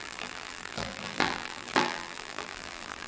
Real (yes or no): no